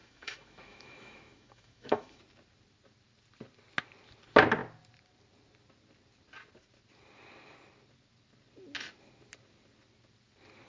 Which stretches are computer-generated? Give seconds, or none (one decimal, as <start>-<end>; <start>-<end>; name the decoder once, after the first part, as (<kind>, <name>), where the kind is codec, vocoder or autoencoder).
0.0-2.2 (autoencoder, DAC-VAE)